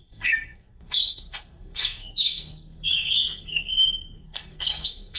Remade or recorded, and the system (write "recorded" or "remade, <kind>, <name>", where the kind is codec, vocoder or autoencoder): remade, codec, SNAC